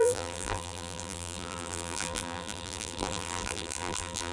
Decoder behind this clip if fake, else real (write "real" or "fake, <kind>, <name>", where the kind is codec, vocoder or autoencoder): fake, vocoder, BigVGAN v2